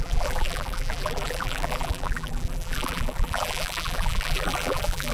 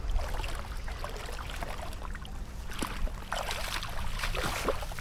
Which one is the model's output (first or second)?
first